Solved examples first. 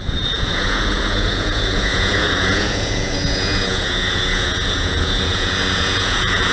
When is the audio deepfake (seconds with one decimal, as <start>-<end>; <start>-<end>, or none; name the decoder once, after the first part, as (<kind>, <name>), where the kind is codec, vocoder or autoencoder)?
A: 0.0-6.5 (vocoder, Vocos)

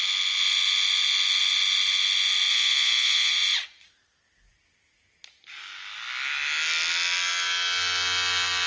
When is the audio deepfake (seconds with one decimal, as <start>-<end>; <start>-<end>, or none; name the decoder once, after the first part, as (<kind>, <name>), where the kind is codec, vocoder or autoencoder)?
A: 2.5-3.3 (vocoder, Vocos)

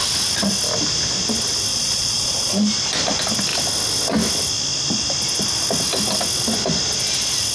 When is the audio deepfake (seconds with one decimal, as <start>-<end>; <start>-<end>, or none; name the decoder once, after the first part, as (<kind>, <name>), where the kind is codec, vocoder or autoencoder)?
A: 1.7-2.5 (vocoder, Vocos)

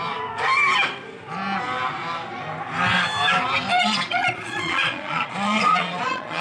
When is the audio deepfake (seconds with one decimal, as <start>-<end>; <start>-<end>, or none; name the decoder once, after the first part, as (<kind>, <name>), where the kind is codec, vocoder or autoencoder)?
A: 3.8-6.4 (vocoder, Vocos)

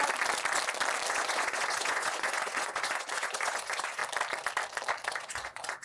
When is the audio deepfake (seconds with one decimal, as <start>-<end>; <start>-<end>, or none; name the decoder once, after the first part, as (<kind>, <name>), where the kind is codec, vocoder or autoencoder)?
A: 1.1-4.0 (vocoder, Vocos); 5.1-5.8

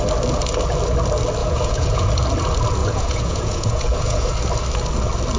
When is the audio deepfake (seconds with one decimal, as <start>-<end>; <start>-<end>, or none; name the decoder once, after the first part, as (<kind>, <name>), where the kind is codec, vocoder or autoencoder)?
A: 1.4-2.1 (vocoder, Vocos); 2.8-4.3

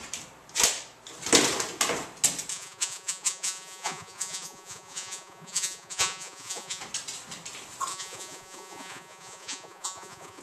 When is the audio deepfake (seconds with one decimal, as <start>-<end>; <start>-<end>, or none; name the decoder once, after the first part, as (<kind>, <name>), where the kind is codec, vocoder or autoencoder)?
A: 2.5-6.8 (vocoder, Vocos); 7.9-10.4